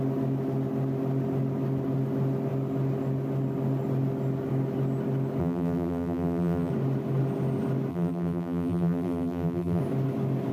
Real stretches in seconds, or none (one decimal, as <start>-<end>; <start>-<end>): 0.0-5.4; 6.7-7.9; 9.8-10.5